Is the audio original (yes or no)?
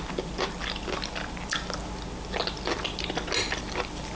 yes